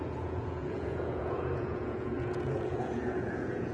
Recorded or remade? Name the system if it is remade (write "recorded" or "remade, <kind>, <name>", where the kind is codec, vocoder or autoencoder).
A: remade, vocoder, Vocos